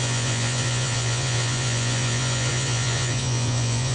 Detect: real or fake fake